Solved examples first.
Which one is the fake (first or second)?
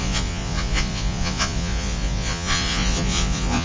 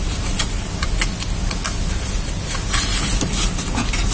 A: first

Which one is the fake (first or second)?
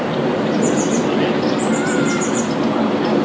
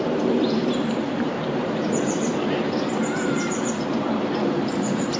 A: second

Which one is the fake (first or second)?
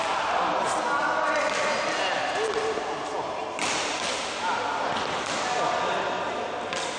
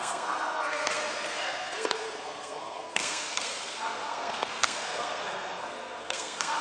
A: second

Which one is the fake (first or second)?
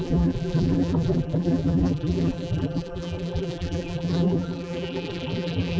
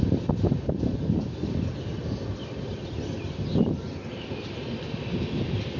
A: first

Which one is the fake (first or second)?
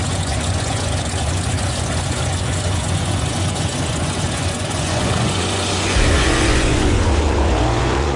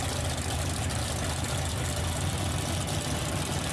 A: first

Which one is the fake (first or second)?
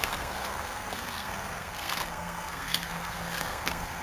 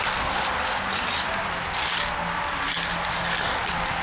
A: first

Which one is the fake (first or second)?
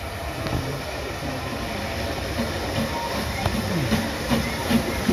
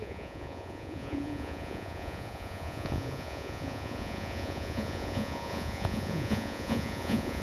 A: second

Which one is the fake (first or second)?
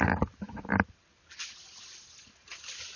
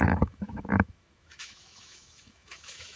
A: second